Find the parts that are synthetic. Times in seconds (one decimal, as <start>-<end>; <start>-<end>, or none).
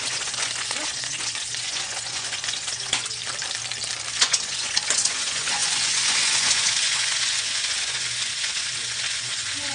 0.0-3.2; 4.1-9.7